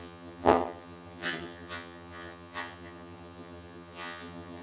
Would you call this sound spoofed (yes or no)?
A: yes